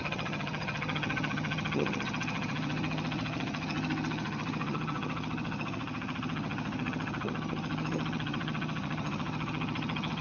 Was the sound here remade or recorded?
remade